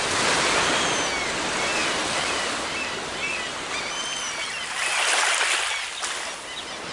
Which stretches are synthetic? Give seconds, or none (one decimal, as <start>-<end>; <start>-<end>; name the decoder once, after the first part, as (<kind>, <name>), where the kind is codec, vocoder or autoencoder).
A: none